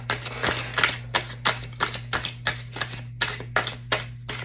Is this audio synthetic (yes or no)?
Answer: no